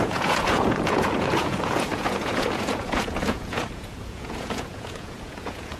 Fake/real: fake